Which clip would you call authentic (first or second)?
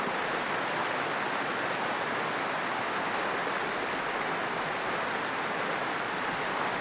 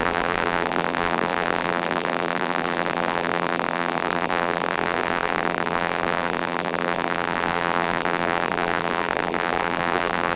first